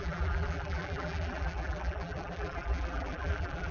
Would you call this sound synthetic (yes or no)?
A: yes